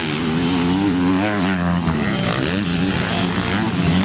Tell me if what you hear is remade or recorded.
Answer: recorded